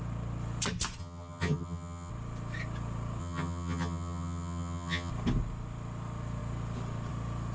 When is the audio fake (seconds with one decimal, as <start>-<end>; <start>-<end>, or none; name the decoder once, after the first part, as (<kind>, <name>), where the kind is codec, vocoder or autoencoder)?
1.0-2.1 (vocoder, HiFi-GAN); 3.2-5.1